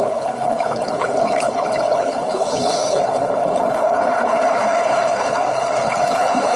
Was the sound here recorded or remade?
remade